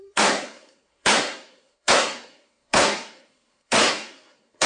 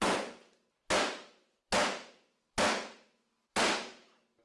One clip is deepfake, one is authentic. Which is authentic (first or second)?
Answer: second